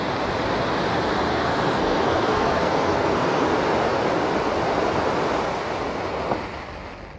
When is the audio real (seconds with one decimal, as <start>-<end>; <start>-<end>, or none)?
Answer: 0.0-1.3; 3.5-7.2